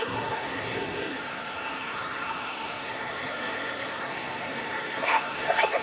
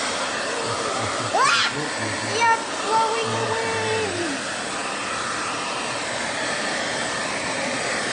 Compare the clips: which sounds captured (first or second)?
second